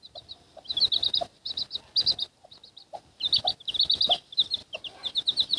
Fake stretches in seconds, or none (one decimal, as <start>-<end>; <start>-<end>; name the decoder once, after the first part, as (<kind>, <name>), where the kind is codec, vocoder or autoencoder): none